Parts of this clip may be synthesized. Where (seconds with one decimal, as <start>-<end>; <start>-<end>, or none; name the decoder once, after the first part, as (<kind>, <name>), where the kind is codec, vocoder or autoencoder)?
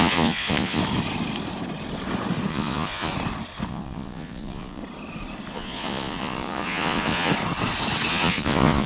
0.0-0.8 (vocoder, Vocos); 2.5-3.1; 3.7-4.8; 5.5-7.3; 8.1-8.9